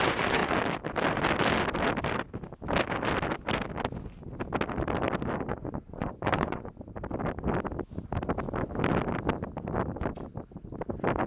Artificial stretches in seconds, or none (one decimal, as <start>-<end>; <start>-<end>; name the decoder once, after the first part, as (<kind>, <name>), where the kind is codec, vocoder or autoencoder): 0.0-0.4 (vocoder, Vocos); 5.5-6.7